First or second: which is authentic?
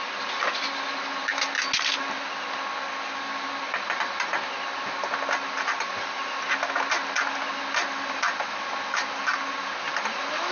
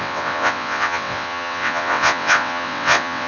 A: first